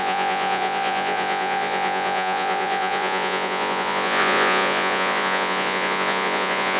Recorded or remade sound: remade